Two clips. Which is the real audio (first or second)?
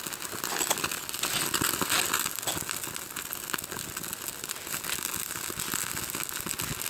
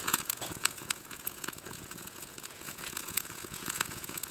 first